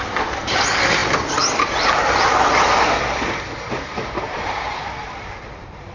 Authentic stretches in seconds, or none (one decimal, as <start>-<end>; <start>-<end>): 0.0-5.9